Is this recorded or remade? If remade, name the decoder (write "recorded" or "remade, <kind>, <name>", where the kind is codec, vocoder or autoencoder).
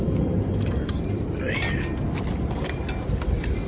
recorded